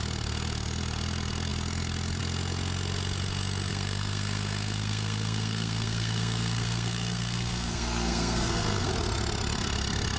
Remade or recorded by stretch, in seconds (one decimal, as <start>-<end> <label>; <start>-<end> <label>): 0.0-3.7 recorded; 3.7-8.9 remade; 8.9-10.2 recorded